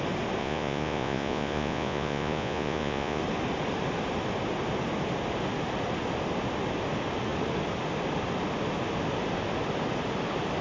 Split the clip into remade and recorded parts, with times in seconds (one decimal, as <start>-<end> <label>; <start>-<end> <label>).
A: 0.0-0.4 recorded; 0.4-3.2 remade; 3.2-10.6 recorded

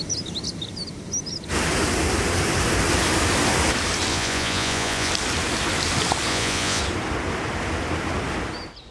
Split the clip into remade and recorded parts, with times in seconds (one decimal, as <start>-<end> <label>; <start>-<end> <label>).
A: 0.0-4.1 recorded; 4.1-5.1 remade; 5.1-6.3 recorded; 6.3-6.8 remade; 6.8-8.9 recorded

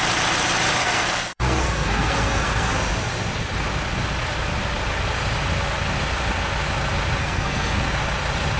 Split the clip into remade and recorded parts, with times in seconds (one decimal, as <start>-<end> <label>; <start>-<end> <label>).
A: 0.0-0.8 recorded; 0.8-2.7 remade; 2.7-7.2 recorded; 7.2-7.8 remade; 7.8-8.6 recorded